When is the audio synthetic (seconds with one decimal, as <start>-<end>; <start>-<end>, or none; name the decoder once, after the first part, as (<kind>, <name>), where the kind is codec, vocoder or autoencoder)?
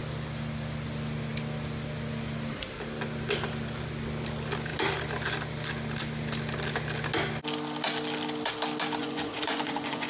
9.0-10.1 (vocoder, Vocos)